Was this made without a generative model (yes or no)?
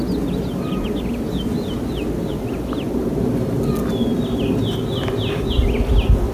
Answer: yes